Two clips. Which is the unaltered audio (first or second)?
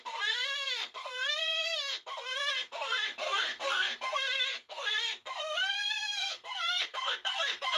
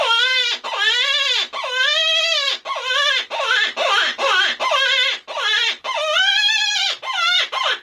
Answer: second